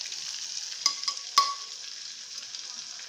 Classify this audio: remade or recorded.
recorded